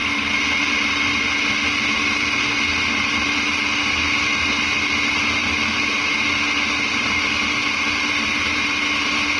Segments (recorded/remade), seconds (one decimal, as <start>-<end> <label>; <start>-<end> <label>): 0.0-9.4 recorded